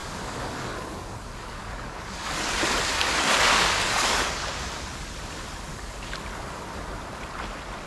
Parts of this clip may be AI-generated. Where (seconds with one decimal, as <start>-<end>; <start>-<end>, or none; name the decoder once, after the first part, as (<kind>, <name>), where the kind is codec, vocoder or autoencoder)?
0.0-4.5 (codec, DAC); 5.7-6.2